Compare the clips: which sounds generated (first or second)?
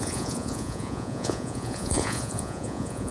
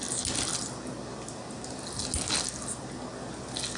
first